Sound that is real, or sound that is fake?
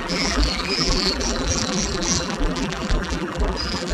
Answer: fake